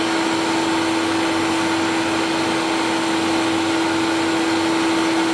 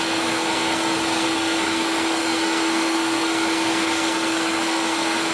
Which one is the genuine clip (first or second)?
first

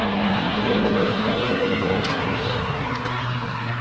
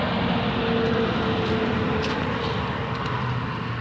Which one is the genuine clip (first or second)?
second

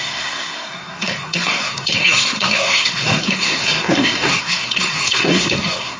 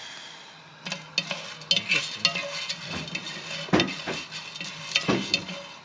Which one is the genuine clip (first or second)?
second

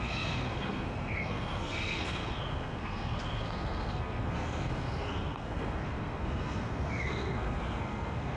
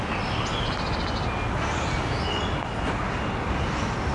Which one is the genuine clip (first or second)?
second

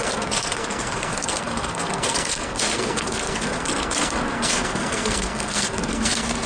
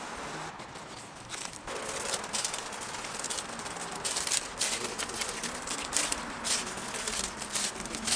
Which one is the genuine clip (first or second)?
second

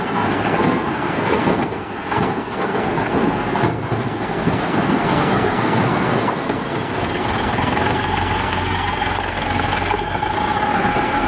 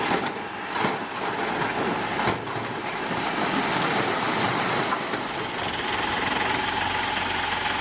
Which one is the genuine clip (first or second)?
second